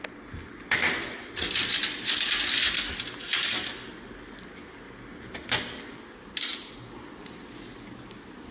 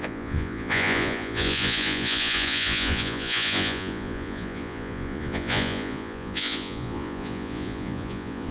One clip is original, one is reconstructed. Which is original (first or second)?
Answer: first